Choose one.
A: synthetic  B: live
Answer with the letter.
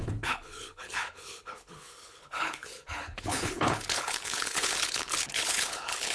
A